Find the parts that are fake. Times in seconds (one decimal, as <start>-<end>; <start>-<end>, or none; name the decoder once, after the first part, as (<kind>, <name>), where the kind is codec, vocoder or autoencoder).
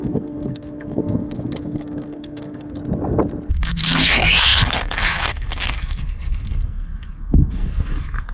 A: 0.0-2.8 (codec, SNAC); 3.5-8.3